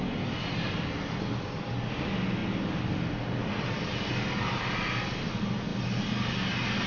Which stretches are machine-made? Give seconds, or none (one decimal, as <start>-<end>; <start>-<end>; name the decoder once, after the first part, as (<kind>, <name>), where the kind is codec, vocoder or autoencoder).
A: none